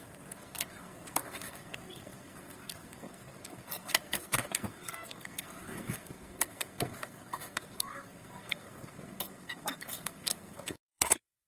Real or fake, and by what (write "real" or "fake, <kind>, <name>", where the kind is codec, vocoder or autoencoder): fake, codec, SNAC